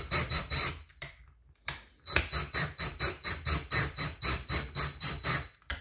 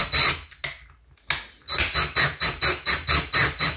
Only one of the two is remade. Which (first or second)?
first